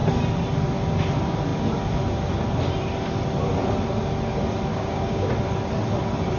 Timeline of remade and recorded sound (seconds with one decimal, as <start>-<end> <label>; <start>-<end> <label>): 0.0-4.7 recorded; 4.7-5.3 remade; 5.3-6.4 recorded